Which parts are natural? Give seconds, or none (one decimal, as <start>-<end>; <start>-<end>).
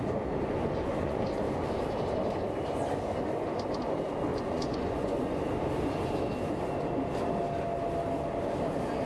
0.0-0.9; 1.8-4.3; 5.4-9.1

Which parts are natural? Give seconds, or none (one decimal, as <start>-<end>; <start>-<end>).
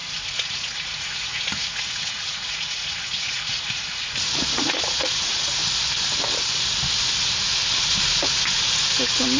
5.6-9.4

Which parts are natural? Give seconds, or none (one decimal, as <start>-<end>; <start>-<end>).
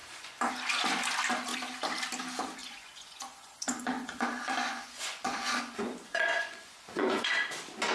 0.5-2.6; 7.3-7.9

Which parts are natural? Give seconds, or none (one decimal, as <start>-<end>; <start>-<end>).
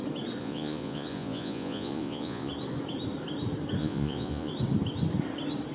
0.0-0.4; 2.5-3.8; 4.5-5.7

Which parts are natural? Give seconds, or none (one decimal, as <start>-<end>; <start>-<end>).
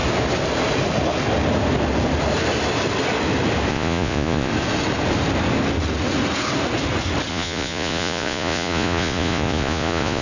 0.0-3.7; 4.5-7.3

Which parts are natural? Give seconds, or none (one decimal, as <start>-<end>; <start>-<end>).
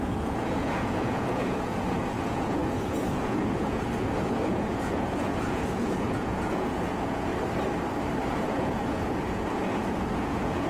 7.3-8.3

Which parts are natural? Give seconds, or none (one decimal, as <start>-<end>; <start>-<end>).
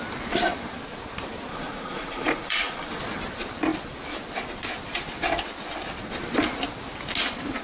0.0-1.5; 2.9-7.6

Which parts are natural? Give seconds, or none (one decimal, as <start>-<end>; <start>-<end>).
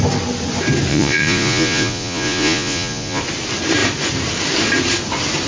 0.0-0.9; 3.2-5.5